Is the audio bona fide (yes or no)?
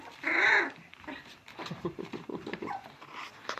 no